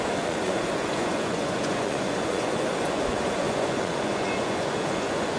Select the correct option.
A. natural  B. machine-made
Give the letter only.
B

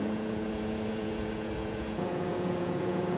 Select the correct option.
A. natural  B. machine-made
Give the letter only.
B